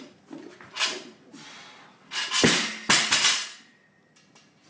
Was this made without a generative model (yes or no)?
yes